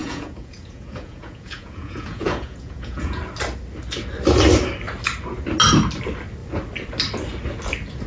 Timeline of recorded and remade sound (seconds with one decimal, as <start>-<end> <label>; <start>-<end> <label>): 0.0-3.2 remade; 3.2-8.1 recorded